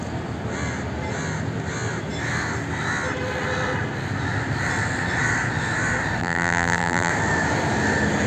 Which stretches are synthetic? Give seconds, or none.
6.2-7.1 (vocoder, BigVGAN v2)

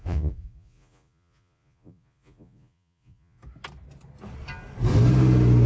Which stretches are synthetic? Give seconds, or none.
0.0-3.4 (vocoder, Vocos)

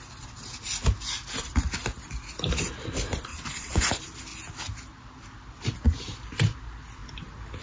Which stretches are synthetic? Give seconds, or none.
3.3-3.9 (vocoder, WaveNeXt)

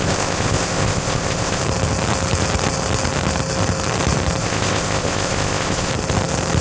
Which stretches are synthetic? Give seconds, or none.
0.0-1.6 (codec, ZipCodec); 4.4-5.9

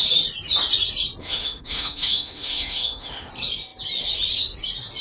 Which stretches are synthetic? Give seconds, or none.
1.2-3.3 (autoencoder, DAC-VAE)

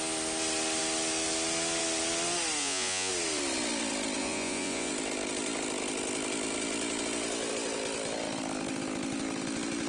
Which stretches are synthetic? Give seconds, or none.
2.6-3.1 (vocoder, Vocos); 4.2-4.9

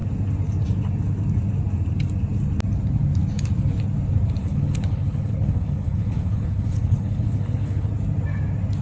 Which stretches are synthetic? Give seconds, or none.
4.4-7.9 (codec, HILCodec)